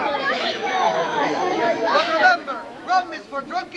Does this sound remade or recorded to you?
remade